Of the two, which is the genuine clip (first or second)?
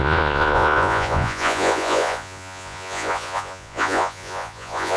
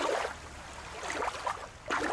second